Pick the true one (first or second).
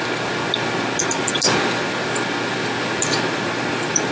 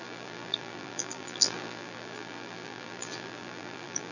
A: first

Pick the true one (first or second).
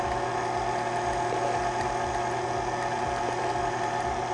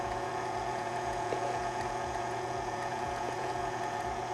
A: first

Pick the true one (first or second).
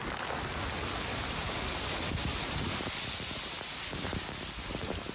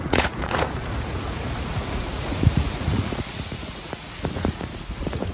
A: first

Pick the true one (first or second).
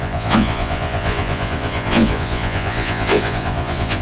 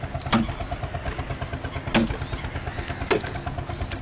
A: second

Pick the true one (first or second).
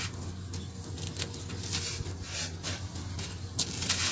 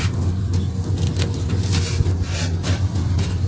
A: first